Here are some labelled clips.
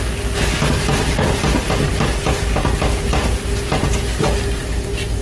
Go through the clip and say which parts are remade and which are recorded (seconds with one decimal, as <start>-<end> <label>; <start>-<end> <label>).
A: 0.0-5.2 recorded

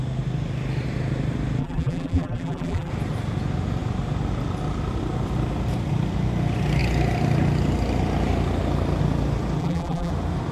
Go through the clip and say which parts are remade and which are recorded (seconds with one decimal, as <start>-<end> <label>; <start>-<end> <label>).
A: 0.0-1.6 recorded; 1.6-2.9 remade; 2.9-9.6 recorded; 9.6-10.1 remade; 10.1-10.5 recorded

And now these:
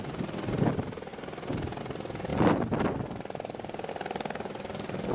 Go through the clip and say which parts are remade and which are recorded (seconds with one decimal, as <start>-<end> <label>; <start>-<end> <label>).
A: 0.0-2.3 recorded; 2.3-3.9 remade; 3.9-5.1 recorded

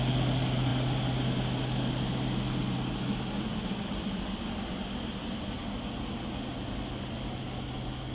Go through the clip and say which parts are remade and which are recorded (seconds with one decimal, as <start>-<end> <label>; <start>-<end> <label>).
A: 0.0-8.1 recorded